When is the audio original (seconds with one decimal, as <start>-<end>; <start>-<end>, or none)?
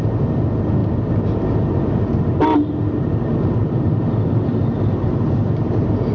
0.0-6.1